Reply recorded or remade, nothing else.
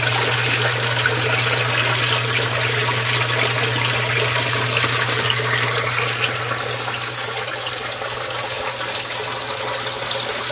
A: recorded